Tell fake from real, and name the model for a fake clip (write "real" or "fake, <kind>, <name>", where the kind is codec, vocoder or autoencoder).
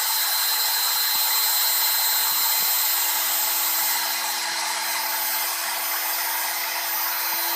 real